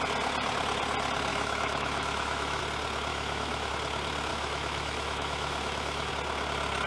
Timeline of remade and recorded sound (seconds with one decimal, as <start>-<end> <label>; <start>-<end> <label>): 0.0-1.3 recorded; 1.3-2.6 remade; 2.6-3.1 recorded; 3.1-3.7 remade; 3.7-4.3 recorded; 4.3-6.1 remade; 6.1-6.9 recorded